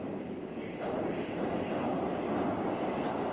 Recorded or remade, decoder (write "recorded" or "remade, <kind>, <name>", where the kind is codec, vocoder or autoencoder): recorded